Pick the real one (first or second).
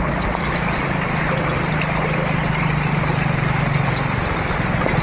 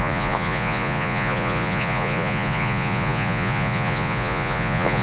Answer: first